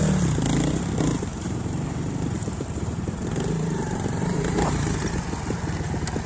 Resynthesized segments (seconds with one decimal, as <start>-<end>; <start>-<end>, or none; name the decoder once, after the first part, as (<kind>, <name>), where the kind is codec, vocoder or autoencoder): 1.3-5.1 (vocoder, BigVGAN v2)